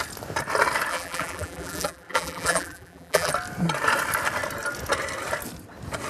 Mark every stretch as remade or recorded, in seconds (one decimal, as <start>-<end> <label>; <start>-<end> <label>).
0.0-0.9 recorded; 0.9-3.3 remade; 3.3-6.1 recorded